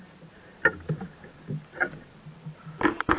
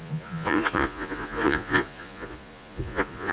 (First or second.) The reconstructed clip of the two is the second